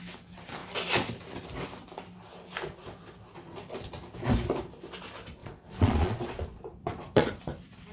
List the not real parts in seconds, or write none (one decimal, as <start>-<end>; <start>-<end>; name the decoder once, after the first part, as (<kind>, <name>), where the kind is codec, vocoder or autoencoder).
5.4-7.4 (vocoder, Vocos)